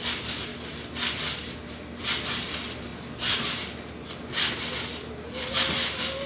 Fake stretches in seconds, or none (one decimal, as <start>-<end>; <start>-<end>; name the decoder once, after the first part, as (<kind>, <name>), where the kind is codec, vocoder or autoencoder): none